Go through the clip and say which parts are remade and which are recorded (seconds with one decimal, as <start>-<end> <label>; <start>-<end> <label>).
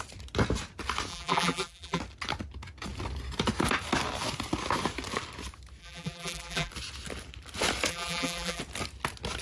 0.0-1.1 recorded; 1.1-2.0 remade; 2.0-5.8 recorded; 5.8-6.7 remade; 6.7-7.9 recorded; 7.9-8.6 remade; 8.6-9.4 recorded